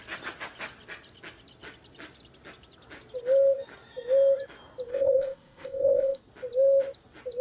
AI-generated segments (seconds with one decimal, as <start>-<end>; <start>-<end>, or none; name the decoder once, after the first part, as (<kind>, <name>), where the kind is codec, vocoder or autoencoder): 4.9-6.2 (codec, ZipCodec)